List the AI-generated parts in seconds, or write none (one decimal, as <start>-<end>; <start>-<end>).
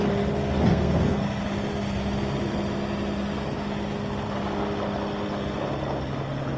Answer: 0.7-1.4